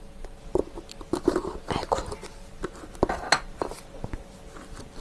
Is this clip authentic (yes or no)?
yes